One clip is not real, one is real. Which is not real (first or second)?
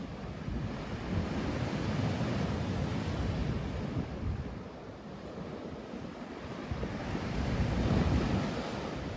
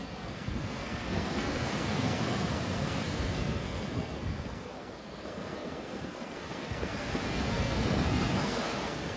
second